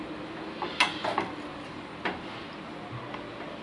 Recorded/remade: recorded